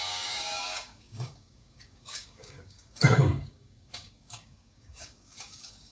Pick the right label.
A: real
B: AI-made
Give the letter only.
B